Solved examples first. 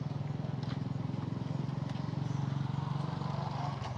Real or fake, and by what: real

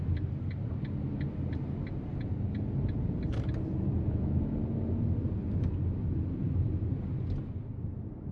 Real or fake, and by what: real